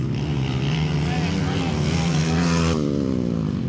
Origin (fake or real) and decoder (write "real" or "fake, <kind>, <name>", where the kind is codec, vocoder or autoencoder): real